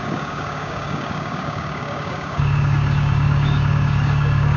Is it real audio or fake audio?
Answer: fake